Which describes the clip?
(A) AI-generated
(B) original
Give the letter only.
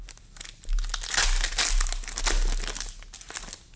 B